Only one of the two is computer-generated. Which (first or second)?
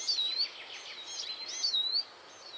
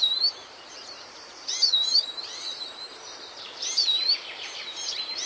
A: second